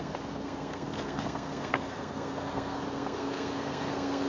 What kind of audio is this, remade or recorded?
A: remade